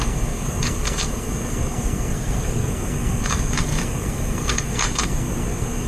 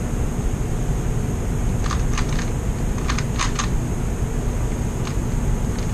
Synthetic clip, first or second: first